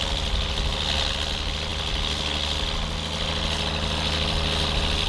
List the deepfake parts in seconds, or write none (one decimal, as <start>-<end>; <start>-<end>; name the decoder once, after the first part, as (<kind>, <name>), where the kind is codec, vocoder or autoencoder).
none